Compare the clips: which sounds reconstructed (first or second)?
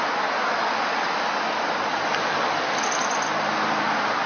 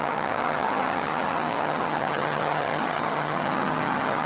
second